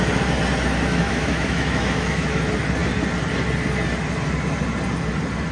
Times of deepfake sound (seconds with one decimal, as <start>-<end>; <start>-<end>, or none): 0.9-2.4